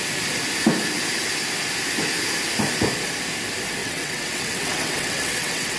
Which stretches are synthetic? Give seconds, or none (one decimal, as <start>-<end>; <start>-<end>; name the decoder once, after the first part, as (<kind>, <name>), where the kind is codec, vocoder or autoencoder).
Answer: 3.8-5.8 (vocoder, WaveNeXt)